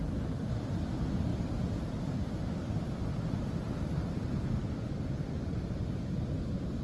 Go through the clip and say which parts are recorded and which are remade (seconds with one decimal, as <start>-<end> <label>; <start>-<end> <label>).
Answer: 0.0-6.8 recorded